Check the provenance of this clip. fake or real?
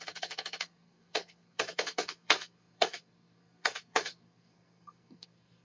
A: fake